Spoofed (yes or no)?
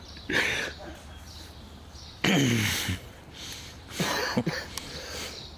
yes